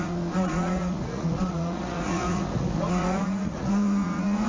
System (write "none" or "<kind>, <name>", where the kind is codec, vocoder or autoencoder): vocoder, Vocos